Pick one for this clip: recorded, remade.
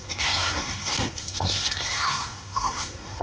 remade